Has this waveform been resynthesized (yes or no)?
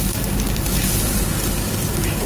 no